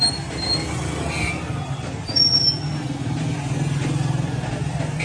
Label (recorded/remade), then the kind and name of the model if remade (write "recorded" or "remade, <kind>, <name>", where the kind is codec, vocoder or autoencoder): recorded